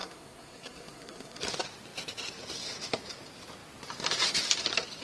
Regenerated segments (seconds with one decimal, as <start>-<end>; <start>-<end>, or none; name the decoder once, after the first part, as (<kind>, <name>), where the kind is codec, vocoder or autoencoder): 0.0-1.4 (codec, SNAC)